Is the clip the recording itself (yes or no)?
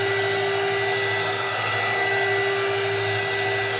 yes